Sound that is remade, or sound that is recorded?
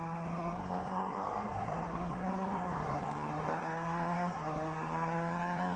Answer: remade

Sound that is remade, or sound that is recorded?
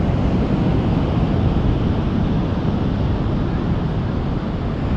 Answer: recorded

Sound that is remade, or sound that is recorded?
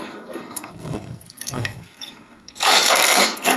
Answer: remade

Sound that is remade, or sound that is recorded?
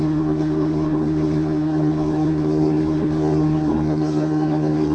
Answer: remade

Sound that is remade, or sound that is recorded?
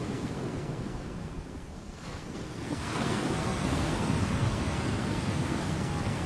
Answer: remade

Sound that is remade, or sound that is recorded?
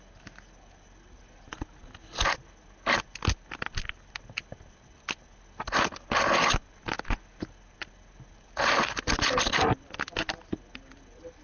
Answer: recorded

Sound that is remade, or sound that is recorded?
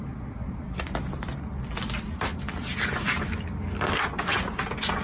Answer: recorded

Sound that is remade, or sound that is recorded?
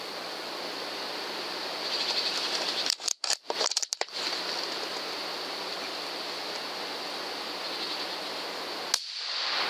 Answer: recorded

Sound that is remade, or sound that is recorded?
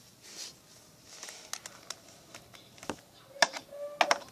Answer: recorded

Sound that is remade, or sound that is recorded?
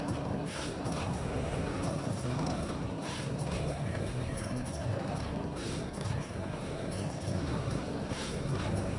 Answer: remade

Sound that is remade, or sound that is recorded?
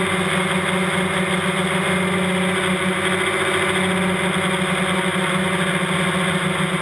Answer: recorded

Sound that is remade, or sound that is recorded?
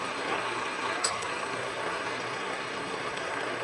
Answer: remade